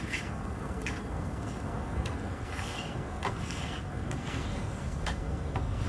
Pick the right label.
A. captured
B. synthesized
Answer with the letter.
B